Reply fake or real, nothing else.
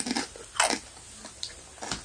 real